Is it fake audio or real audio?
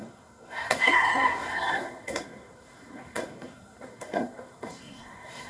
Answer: fake